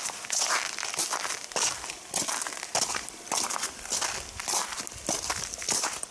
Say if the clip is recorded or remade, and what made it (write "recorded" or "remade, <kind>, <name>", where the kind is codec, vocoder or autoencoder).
recorded